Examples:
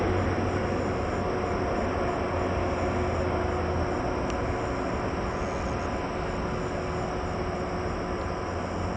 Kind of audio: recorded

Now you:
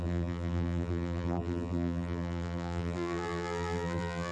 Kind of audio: remade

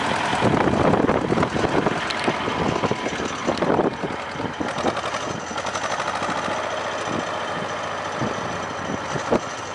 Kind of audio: recorded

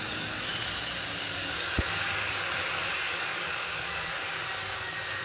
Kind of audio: remade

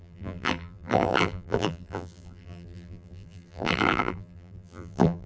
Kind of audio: remade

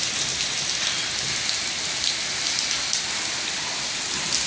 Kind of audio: recorded